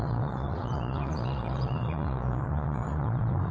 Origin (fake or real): fake